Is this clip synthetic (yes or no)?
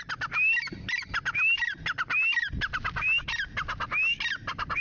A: no